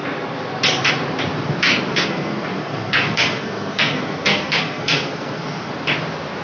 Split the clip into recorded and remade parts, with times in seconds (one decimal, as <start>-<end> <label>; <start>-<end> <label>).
0.0-1.9 recorded; 1.9-5.7 remade; 5.7-6.4 recorded

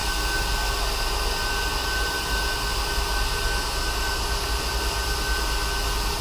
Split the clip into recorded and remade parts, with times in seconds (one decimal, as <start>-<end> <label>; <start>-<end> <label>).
0.0-6.2 recorded

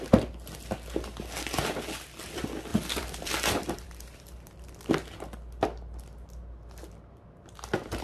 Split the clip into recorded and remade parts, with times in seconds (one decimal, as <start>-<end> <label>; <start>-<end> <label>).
0.0-2.7 recorded; 2.7-4.9 remade; 4.9-8.0 recorded

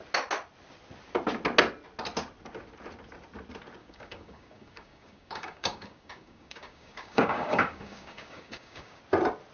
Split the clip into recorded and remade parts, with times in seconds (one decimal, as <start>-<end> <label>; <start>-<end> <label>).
0.0-3.8 recorded; 3.8-9.0 remade; 9.0-9.5 recorded